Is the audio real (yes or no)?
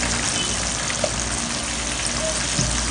yes